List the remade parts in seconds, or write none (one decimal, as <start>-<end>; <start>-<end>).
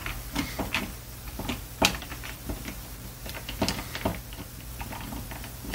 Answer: 2.1-3.6